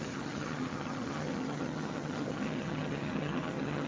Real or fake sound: fake